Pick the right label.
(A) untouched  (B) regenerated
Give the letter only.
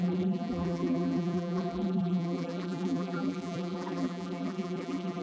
B